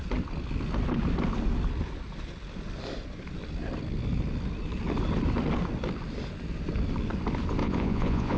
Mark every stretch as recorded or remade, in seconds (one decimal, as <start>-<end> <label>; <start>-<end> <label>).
0.0-7.6 recorded; 7.6-8.4 remade